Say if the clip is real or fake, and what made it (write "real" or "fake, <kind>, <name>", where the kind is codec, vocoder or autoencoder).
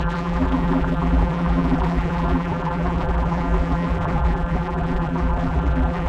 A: fake, vocoder, BigVGAN v2